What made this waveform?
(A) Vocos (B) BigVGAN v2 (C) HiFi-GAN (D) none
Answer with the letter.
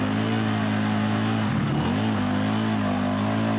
D